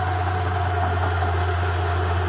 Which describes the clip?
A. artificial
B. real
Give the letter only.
B